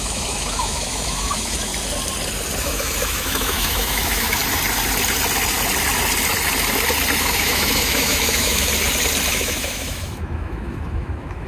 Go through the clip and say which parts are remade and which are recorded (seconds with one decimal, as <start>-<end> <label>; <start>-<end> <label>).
0.0-1.7 remade; 1.7-2.6 recorded; 2.6-4.4 remade; 4.4-7.2 recorded; 7.2-8.7 remade; 8.7-9.3 recorded; 9.3-11.5 remade